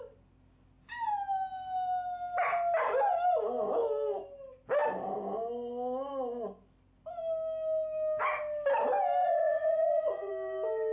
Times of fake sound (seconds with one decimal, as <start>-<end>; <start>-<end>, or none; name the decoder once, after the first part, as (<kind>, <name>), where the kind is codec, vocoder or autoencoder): 9.2-10.3 (vocoder, Vocos)